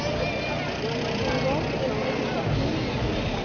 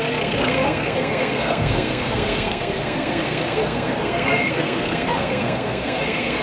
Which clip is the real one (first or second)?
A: first